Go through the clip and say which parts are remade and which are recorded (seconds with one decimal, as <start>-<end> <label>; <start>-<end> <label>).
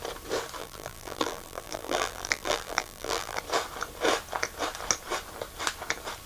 0.0-0.6 recorded; 0.6-3.4 remade; 3.4-6.3 recorded